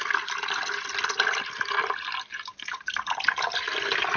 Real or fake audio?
real